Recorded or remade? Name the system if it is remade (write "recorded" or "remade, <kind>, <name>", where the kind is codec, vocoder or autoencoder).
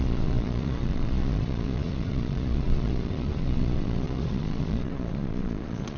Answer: remade, vocoder, Vocos